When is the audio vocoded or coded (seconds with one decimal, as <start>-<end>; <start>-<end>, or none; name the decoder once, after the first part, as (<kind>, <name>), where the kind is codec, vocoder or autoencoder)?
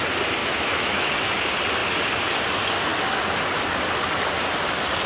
0.4-1.1 (autoencoder, DAC-VAE)